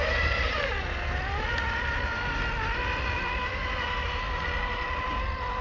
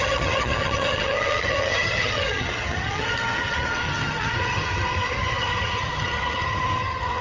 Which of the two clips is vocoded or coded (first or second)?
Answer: second